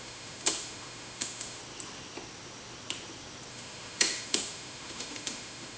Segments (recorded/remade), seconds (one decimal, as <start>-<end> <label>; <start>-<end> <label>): 0.0-1.6 remade; 1.6-3.5 recorded; 3.5-5.8 remade